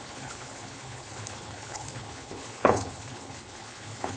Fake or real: fake